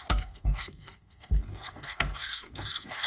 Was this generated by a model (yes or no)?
yes